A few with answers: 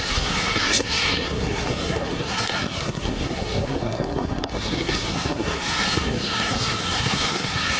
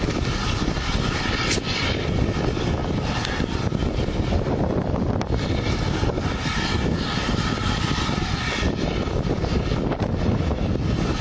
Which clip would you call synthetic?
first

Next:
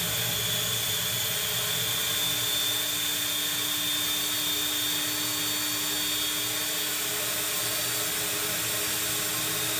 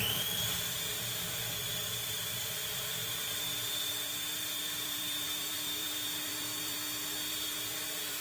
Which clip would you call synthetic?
second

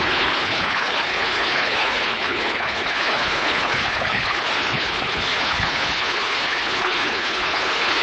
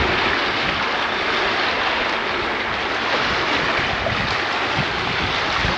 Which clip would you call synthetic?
first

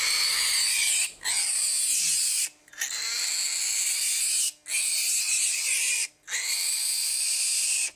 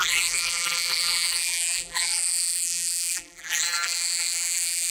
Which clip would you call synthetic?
second